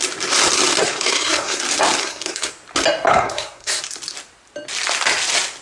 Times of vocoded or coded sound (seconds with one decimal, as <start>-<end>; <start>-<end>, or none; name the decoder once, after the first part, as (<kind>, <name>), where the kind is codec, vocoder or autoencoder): 0.8-1.6 (codec, SNAC); 2.0-2.5; 3.1-3.8

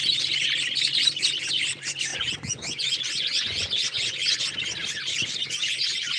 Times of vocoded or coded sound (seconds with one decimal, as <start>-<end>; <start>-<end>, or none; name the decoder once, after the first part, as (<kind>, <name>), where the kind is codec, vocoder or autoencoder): 2.1-4.4 (vocoder, Vocos); 5.4-6.2

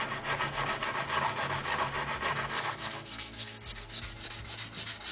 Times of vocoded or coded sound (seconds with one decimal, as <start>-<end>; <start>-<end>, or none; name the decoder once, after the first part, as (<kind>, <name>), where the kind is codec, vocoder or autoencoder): 2.3-4.0 (codec, SNAC)